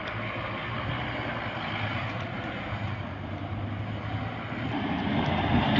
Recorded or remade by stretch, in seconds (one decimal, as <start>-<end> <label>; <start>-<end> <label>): 0.0-1.9 recorded; 1.9-3.0 remade; 3.0-5.8 recorded